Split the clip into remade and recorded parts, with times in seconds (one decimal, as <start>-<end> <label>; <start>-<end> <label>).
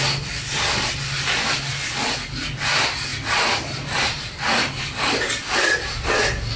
0.0-6.6 recorded